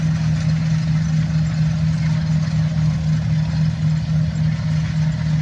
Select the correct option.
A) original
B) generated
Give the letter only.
A